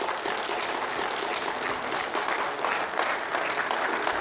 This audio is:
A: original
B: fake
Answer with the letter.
A